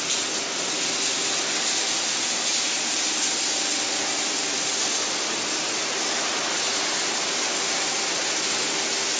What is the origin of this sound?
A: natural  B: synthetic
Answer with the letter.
A